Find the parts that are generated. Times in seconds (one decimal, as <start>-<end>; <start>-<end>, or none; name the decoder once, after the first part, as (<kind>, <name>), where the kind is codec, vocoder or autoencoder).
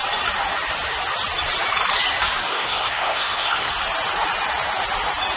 2.5-3.7 (codec, SNAC)